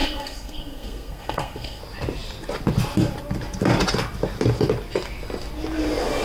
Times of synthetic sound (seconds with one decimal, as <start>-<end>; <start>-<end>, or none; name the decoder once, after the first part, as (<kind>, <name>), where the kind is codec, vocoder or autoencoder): 0.0-1.8 (codec, SNAC)